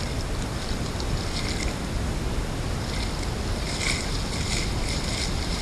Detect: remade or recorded recorded